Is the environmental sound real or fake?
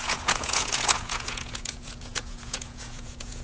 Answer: fake